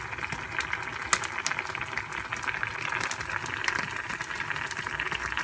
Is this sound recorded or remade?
recorded